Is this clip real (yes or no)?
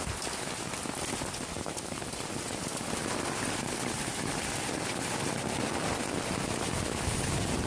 yes